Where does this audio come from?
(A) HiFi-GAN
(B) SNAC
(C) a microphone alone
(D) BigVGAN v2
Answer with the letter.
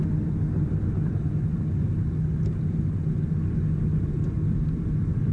C